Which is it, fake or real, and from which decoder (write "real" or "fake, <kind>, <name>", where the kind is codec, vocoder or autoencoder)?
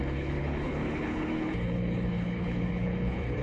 fake, codec, HILCodec